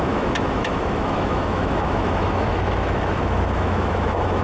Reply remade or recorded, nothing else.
remade